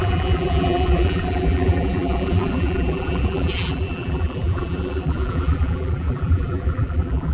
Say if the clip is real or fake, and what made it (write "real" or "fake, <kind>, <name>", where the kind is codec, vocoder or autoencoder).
fake, vocoder, BigVGAN v2